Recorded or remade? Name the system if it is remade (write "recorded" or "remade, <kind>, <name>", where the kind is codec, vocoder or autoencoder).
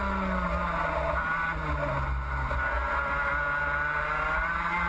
recorded